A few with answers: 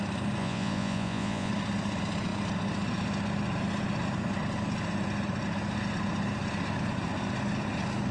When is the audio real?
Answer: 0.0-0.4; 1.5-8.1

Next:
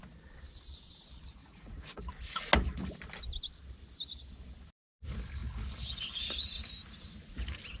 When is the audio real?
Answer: 0.0-1.4; 2.0-7.8

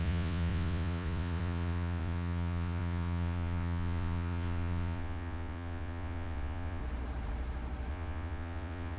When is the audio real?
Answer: 6.8-7.9

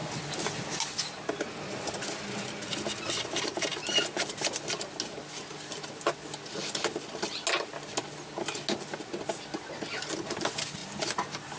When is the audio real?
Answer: 0.0-11.6

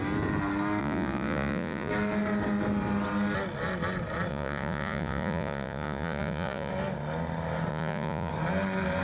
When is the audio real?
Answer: 0.0-0.8; 1.9-4.3; 6.7-7.7; 8.3-9.0

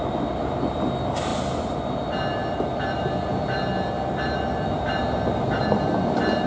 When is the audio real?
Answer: 0.0-6.5

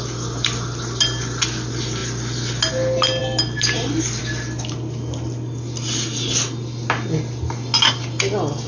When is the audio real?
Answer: 0.0-8.7

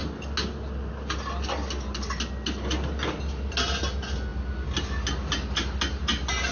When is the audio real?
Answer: 0.0-6.5